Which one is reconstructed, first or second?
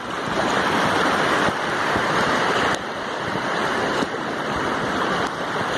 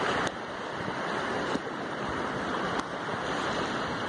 first